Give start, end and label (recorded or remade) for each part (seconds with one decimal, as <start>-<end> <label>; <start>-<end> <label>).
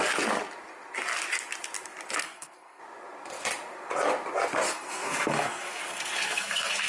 0.0-2.2 recorded; 2.2-2.8 remade; 2.8-4.7 recorded; 4.7-6.9 remade